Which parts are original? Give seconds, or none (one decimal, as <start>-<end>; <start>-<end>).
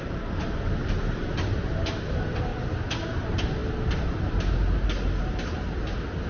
0.0-6.3